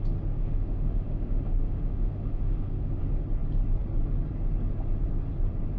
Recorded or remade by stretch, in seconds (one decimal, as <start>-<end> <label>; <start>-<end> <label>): 0.0-0.4 recorded; 0.4-3.0 remade; 3.0-5.8 recorded